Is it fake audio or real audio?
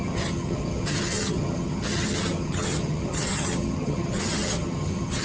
fake